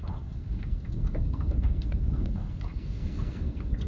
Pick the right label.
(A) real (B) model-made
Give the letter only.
B